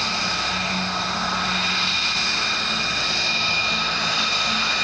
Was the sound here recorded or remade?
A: recorded